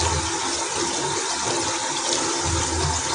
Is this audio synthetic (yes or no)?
no